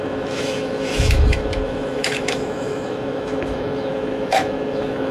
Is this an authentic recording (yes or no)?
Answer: no